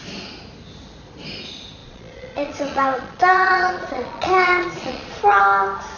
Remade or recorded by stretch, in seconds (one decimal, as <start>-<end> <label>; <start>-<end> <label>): 0.0-1.8 recorded; 1.8-5.4 remade; 5.4-6.0 recorded